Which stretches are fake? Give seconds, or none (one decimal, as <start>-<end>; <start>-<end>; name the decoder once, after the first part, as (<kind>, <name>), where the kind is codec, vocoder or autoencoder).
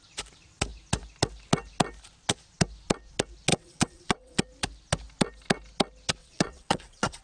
3.5-4.4 (vocoder, WaveNeXt); 6.2-7.2